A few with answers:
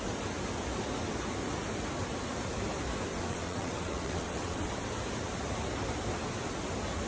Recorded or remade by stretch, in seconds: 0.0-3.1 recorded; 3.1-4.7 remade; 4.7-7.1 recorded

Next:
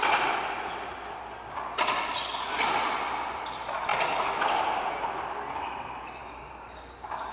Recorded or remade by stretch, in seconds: 0.0-6.2 recorded; 6.2-7.3 remade

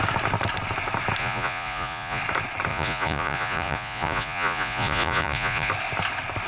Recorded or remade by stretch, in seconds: 0.0-1.2 recorded; 1.2-2.2 remade; 2.2-2.7 recorded; 2.7-5.7 remade; 5.7-6.5 recorded

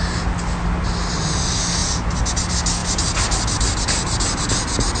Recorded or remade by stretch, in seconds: 0.0-5.0 recorded

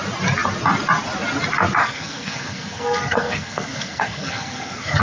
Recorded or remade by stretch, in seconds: 0.0-1.8 recorded; 1.8-5.0 remade